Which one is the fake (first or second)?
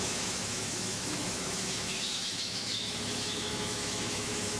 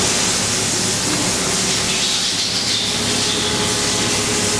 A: first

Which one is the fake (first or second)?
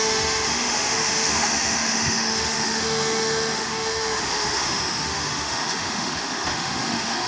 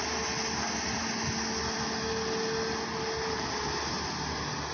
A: first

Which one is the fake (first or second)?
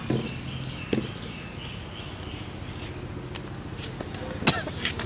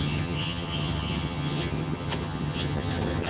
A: second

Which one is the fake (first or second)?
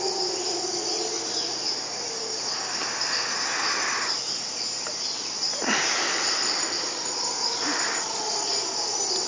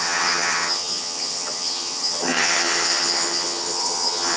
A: second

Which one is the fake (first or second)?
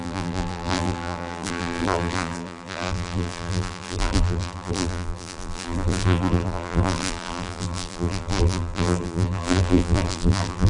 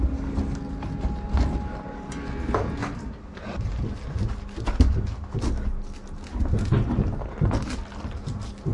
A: first